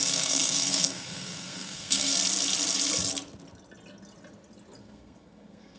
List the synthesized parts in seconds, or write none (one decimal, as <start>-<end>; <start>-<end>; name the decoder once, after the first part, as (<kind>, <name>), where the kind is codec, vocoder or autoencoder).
0.0-2.1 (codec, SNAC); 4.8-5.8